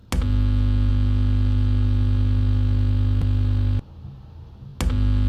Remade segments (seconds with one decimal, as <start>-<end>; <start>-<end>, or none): none